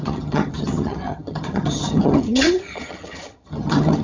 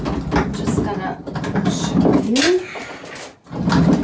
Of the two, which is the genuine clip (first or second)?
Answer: second